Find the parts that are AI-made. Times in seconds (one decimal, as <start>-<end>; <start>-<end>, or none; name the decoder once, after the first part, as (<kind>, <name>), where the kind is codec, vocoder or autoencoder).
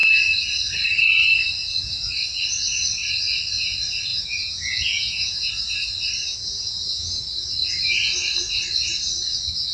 4.1-5.5 (vocoder, Vocos); 6.3-7.2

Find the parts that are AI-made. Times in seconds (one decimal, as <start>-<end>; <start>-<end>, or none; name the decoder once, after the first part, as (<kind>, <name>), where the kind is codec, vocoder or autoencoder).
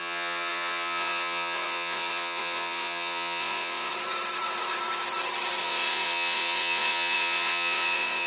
0.0-3.9 (vocoder, Vocos); 5.6-8.3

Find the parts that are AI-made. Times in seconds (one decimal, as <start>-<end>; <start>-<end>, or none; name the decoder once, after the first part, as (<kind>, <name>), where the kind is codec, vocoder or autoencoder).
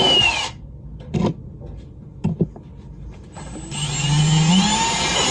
none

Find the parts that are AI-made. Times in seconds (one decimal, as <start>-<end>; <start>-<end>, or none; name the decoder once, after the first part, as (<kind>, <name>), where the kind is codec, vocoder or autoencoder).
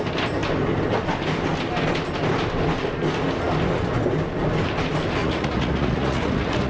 5.2-6.7 (vocoder, Vocos)